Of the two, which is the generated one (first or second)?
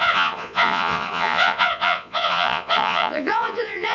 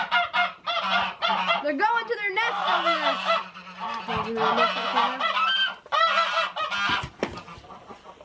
first